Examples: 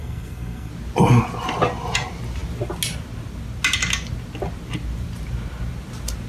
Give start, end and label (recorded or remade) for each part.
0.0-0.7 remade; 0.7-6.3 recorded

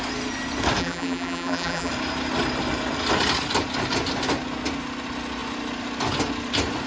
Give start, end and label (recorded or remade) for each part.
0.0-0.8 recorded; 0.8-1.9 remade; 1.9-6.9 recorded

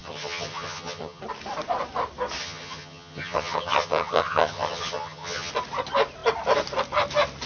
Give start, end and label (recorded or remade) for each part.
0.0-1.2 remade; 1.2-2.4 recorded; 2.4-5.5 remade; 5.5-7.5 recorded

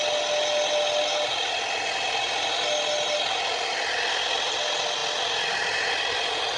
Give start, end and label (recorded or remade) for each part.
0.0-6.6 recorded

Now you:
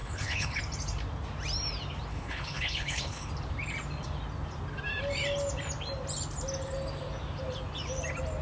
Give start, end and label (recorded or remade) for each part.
0.0-0.6 remade; 0.6-2.1 recorded; 2.1-3.3 remade; 3.3-8.4 recorded